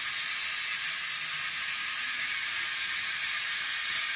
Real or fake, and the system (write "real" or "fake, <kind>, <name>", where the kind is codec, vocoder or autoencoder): real